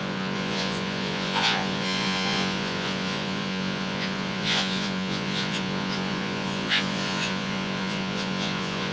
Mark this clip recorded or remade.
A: remade